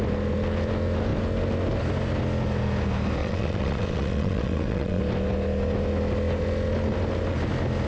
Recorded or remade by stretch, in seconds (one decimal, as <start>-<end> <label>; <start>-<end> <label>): 0.0-3.2 recorded; 3.2-5.0 remade; 5.0-7.9 recorded